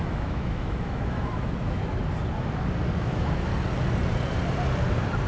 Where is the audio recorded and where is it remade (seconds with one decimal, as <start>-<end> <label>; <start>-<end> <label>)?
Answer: 0.0-1.8 remade; 1.8-3.0 recorded; 3.0-3.5 remade; 3.5-5.3 recorded